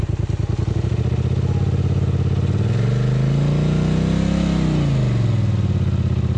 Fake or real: real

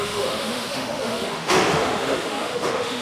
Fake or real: fake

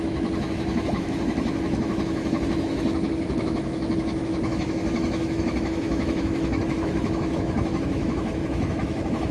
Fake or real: fake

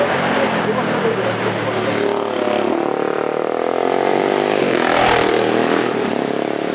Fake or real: real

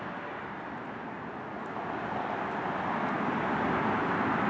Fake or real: real